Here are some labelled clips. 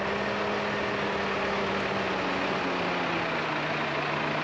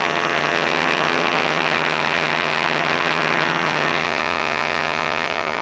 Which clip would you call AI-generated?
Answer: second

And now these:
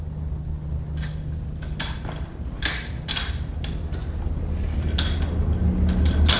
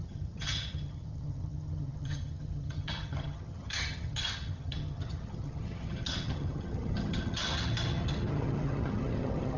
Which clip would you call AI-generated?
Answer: second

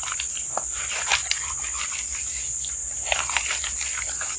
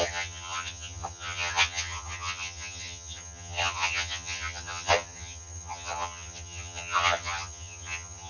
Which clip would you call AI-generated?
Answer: second